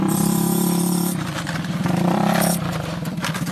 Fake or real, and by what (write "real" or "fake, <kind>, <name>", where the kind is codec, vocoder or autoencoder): fake, vocoder, BigVGAN v2